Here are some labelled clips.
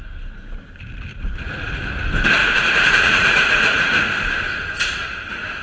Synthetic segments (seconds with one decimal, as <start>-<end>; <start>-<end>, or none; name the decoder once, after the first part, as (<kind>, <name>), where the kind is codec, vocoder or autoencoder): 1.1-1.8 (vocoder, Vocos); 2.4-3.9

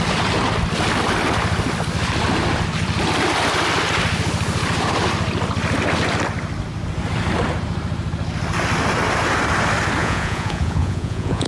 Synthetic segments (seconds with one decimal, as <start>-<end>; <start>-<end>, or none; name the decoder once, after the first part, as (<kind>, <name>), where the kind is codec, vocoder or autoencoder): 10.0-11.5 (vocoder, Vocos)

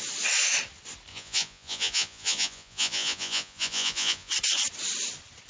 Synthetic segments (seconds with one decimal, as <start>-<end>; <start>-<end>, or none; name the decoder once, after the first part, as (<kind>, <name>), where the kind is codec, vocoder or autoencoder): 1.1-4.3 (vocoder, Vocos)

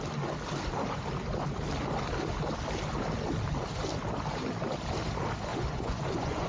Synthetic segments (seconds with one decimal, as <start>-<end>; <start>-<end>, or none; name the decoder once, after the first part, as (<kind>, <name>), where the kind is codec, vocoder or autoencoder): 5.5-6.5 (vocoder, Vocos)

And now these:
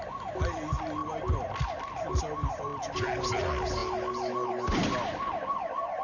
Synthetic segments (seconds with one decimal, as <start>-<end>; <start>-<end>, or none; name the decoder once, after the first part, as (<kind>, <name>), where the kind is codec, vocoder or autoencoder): none

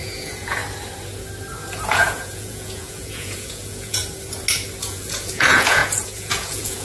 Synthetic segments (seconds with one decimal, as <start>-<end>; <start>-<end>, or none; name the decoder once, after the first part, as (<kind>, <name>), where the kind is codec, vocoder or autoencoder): 0.0-0.6 (vocoder, Vocos); 1.9-4.0; 4.8-6.8

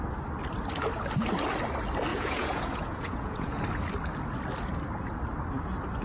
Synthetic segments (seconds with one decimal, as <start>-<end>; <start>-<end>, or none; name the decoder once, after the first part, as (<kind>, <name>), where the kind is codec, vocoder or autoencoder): 2.1-3.6 (vocoder, Vocos)

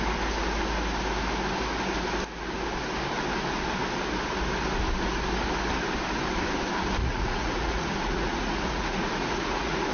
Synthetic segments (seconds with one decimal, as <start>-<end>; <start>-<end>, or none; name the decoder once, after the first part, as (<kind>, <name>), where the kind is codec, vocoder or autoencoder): 7.0-9.9 (vocoder, Vocos)